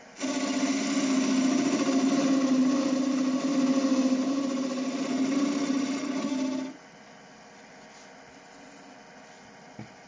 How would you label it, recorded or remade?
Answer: recorded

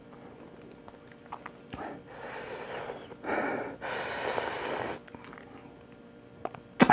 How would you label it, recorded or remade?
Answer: recorded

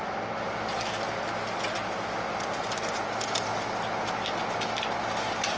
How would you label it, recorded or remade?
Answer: recorded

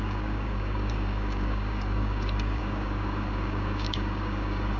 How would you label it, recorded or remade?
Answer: remade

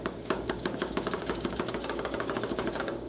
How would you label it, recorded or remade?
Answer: remade